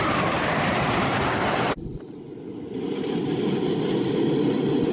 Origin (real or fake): fake